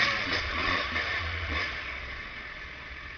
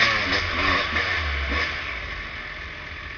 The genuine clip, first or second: second